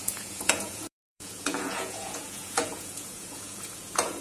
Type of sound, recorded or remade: remade